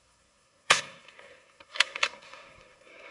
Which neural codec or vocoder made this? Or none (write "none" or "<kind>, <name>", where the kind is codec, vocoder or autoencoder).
codec, SNAC